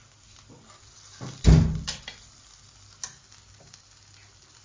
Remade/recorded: recorded